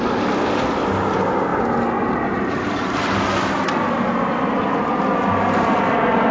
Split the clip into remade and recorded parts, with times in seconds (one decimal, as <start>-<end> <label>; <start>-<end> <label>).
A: 0.0-6.3 recorded